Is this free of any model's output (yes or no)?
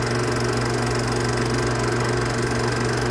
yes